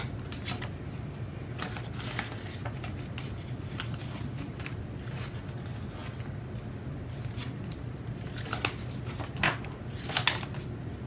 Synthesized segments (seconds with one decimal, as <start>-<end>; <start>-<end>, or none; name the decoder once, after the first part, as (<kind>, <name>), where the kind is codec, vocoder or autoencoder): none